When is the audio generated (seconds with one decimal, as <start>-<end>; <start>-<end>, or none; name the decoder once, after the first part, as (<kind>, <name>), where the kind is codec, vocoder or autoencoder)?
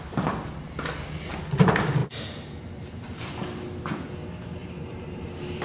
2.0-3.2 (vocoder, BigVGAN v2); 4.6-5.6